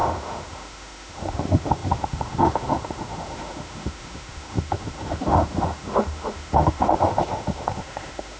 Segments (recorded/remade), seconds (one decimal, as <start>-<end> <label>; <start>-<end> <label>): 0.0-8.4 remade